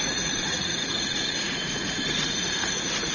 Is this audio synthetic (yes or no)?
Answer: yes